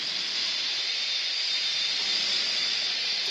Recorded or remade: recorded